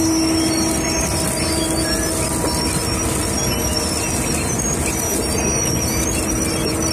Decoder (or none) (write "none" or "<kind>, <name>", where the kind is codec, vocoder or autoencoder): none